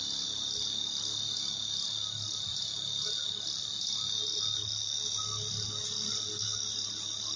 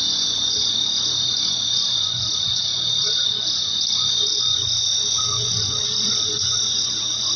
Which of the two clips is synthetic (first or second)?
second